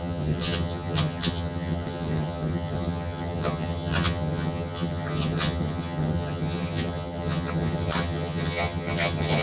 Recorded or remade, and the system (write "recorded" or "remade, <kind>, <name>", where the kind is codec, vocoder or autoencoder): remade, vocoder, HiFi-GAN